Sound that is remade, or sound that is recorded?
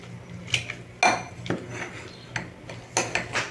recorded